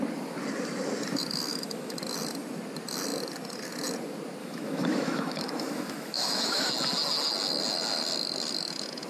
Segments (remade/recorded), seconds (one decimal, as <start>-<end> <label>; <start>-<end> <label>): 0.0-1.5 recorded; 1.5-2.0 remade; 2.0-4.4 recorded; 4.4-6.7 remade; 6.7-9.1 recorded